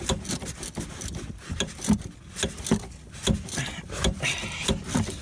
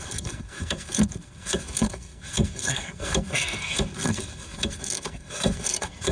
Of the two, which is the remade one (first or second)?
second